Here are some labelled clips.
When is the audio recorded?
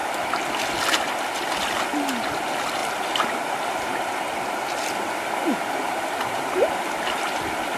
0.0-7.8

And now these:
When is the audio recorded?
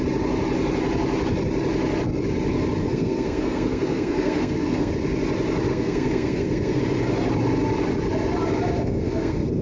0.0-2.8; 4.9-5.7; 6.8-8.8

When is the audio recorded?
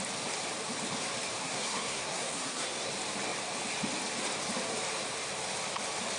0.0-1.4; 2.9-6.2